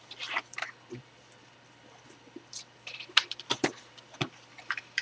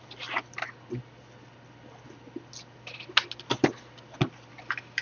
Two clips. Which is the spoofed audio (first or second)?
first